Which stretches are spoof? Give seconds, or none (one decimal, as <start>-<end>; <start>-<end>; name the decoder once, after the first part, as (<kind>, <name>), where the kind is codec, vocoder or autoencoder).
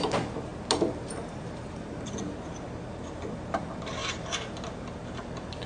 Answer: none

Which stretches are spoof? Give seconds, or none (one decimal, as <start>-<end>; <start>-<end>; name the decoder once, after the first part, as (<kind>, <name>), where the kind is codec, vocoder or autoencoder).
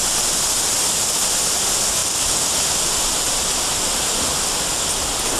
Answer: none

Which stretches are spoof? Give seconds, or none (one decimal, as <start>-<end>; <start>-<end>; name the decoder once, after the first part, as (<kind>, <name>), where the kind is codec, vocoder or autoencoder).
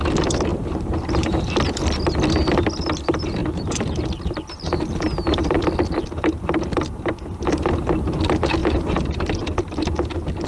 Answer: 0.5-1.5 (vocoder, BigVGAN v2); 8.6-9.3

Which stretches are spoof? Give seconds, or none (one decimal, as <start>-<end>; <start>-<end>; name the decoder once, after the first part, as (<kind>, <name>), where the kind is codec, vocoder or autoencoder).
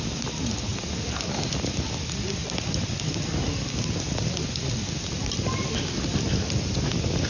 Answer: 0.7-1.4 (vocoder, BigVGAN v2); 2.4-5.4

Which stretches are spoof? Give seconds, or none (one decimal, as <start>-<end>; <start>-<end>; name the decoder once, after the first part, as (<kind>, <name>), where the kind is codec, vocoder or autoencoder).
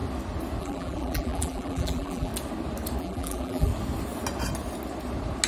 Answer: 0.6-2.3 (vocoder, BigVGAN v2); 3.0-3.7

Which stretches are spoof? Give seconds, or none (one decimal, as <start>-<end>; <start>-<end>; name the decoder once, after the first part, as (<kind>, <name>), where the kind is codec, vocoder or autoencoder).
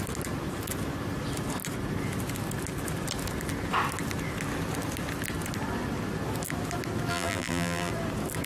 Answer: 7.1-7.9 (vocoder, BigVGAN v2)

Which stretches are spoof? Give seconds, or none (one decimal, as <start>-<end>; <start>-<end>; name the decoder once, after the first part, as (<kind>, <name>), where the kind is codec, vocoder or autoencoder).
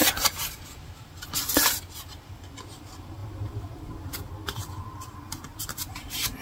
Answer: 0.0-1.5 (vocoder, BigVGAN v2); 3.2-4.1; 5.5-6.4